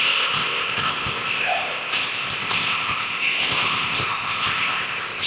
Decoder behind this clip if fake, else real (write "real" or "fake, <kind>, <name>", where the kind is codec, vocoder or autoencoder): fake, codec, ZipCodec